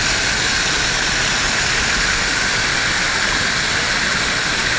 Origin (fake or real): real